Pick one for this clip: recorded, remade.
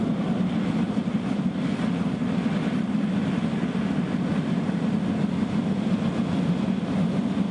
recorded